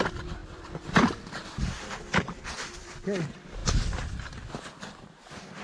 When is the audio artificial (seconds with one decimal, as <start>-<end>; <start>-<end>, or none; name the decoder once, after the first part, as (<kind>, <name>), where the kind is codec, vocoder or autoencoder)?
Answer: 0.0-3.6 (vocoder, BigVGAN v2); 4.6-5.6